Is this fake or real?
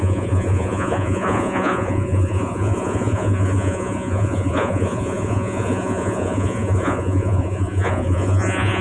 fake